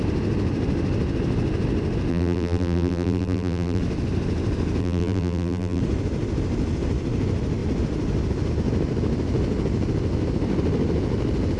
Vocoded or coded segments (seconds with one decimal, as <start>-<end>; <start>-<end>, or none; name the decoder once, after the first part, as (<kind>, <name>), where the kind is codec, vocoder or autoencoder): 2.1-3.8 (vocoder, BigVGAN v2); 4.8-5.8